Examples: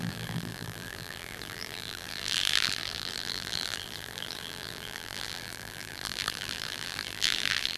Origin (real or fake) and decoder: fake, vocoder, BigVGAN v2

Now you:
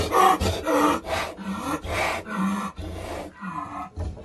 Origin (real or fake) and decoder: real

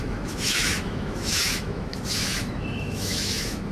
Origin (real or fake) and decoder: fake, autoencoder, DAC-VAE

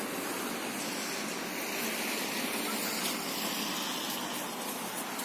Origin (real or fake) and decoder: real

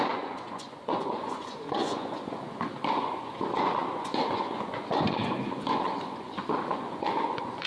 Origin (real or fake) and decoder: fake, vocoder, Vocos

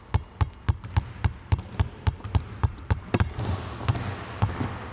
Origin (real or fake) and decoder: real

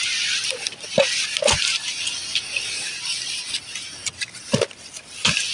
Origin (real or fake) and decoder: real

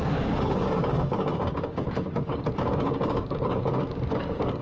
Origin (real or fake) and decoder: fake, codec, DAC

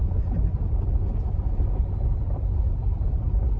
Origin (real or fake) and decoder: real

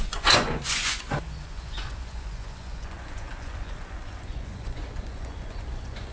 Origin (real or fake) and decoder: fake, vocoder, Vocos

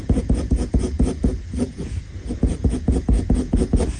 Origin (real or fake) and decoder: fake, vocoder, Vocos